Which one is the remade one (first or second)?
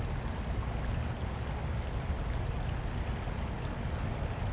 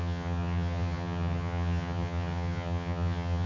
second